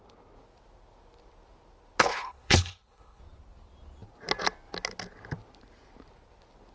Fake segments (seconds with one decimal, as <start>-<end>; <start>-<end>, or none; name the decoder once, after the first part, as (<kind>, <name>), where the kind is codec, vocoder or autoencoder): 2.1-3.2 (codec, HILCodec)

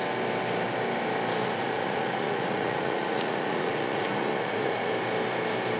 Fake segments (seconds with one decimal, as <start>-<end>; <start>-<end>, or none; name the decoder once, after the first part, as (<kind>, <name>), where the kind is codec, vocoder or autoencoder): 1.4-4.9 (vocoder, Vocos)

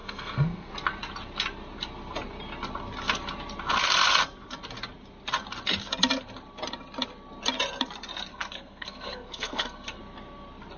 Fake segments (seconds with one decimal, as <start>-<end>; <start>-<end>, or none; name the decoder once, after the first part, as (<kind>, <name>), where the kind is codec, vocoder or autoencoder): 0.0-0.7 (codec, SNAC); 8.3-10.0

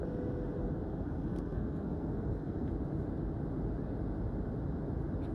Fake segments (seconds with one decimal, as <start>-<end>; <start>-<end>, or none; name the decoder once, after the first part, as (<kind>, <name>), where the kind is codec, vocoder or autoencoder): 0.9-2.7 (codec, SNAC)

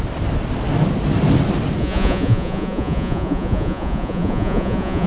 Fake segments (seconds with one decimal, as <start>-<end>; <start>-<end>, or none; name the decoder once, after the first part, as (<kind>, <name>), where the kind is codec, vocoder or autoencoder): 1.8-5.1 (vocoder, Vocos)

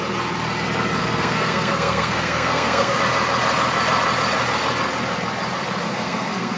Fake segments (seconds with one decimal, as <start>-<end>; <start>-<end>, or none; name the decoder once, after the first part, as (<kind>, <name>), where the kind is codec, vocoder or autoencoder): 1.0-3.0 (codec, SNAC); 5.9-6.6

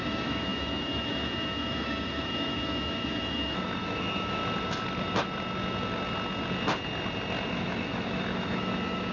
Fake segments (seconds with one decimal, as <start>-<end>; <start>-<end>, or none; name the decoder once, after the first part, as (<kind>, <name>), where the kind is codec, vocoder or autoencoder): 0.0-4.4 (autoencoder, DAC-VAE); 7.5-9.1